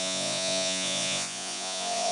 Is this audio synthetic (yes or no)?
yes